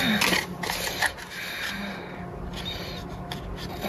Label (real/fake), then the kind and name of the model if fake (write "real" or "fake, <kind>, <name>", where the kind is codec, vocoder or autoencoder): real